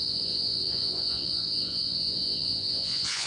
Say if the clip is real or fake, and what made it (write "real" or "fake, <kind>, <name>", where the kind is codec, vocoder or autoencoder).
fake, vocoder, Vocos